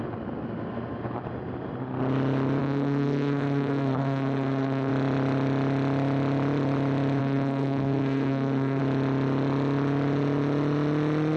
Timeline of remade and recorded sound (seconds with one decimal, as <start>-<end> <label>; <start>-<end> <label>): 0.0-2.6 recorded; 2.6-4.9 remade; 4.9-7.2 recorded; 7.2-8.8 remade; 8.8-11.4 recorded